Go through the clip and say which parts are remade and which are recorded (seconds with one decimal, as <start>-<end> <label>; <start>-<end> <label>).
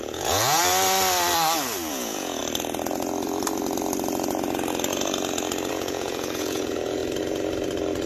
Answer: 0.0-0.6 remade; 0.6-1.9 recorded; 1.9-2.4 remade; 2.4-5.7 recorded; 5.7-7.0 remade; 7.0-8.1 recorded